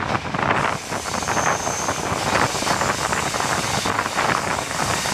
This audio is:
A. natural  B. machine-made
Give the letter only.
A